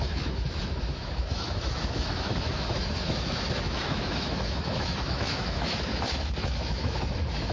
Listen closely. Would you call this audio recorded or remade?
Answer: remade